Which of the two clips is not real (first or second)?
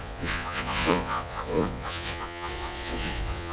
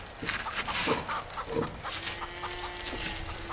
first